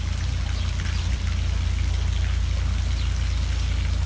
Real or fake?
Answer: real